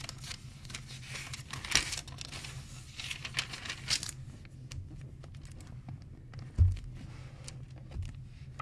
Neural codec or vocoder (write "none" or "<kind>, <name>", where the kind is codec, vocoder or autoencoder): none